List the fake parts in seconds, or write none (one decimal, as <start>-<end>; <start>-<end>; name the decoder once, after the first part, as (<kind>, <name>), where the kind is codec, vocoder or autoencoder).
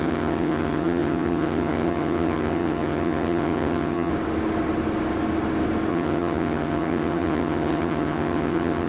0.0-4.1 (vocoder, HiFi-GAN); 5.9-8.9